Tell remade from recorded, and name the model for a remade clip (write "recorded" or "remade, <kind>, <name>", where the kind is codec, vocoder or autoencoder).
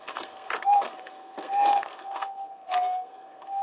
remade, codec, SNAC